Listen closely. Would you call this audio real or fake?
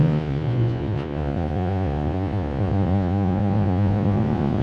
fake